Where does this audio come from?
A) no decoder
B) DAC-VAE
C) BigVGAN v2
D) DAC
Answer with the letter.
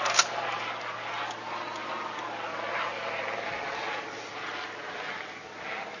A